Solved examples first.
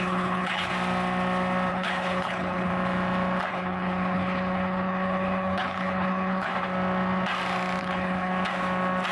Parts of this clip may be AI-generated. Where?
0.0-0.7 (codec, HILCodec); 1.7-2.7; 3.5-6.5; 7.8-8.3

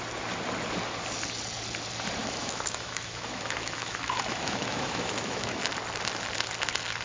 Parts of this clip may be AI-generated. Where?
2.2-5.6 (autoencoder, DAC-VAE)

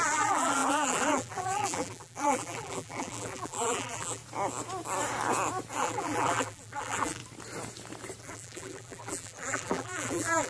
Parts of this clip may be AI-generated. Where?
0.0-4.2 (vocoder, BigVGAN v2); 5.8-7.2; 8.2-10.5

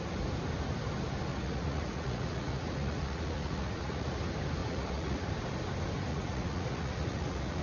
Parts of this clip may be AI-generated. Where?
1.3-4.1 (vocoder, Vocos); 4.6-5.3; 6.1-7.6

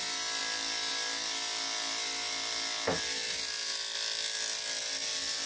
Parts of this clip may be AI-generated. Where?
none

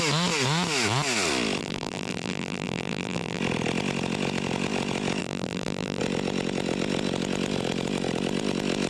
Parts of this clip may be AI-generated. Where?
1.6-3.4 (vocoder, BigVGAN v2); 5.2-6.0

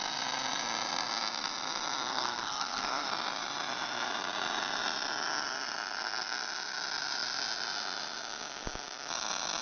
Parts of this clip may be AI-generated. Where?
2.1-3.1 (codec, SNAC)

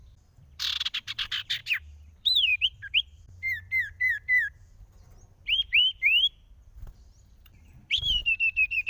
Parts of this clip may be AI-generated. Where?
0.0-1.6 (vocoder, BigVGAN v2); 2.1-8.9